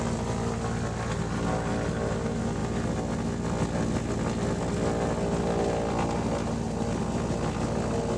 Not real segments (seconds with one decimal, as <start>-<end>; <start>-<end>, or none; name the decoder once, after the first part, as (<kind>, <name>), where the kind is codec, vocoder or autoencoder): none